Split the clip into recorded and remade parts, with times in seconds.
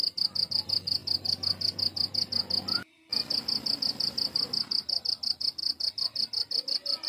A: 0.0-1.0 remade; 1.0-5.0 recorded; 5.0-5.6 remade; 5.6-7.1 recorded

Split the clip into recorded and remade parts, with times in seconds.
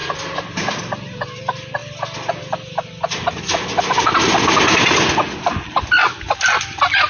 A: 0.0-7.1 recorded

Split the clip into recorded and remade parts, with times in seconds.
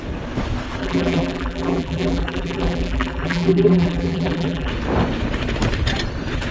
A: 0.0-0.8 recorded; 0.8-4.7 remade; 4.7-6.5 recorded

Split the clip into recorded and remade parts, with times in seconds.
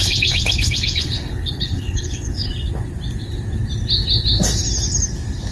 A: 0.0-2.5 remade; 2.5-5.5 recorded